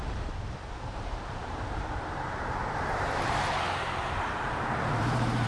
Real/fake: fake